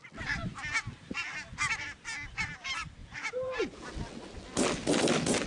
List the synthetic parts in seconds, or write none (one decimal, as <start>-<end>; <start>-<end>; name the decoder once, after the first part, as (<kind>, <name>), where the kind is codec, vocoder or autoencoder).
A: 3.0-3.9 (vocoder, Vocos)